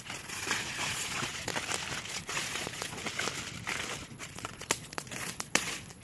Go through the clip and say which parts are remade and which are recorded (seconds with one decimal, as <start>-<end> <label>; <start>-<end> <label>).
0.0-1.5 remade; 1.5-2.1 recorded; 2.1-3.0 remade; 3.0-4.0 recorded; 4.0-6.0 remade